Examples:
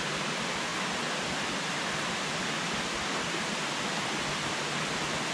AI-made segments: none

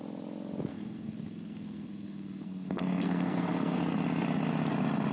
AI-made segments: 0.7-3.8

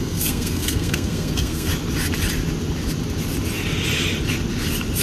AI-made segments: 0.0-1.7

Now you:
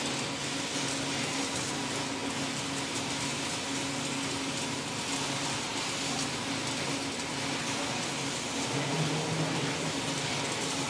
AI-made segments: none